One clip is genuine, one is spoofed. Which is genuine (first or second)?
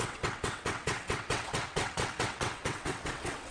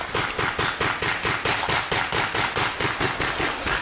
second